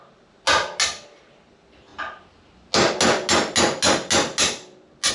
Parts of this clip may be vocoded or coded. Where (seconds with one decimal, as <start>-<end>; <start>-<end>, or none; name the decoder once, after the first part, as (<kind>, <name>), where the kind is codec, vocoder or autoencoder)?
none